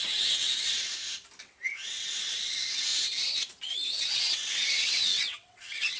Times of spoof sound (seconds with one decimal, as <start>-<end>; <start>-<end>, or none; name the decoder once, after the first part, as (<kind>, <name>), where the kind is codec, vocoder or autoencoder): 0.0-0.9 (vocoder, WaveNeXt); 1.4-2.9; 4.1-6.0